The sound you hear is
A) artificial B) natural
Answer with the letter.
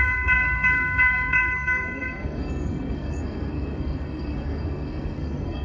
A